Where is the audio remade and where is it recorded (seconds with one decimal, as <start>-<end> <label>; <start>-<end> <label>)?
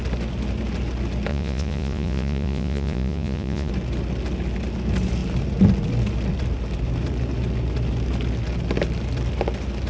0.0-1.3 recorded; 1.3-3.7 remade; 3.7-9.9 recorded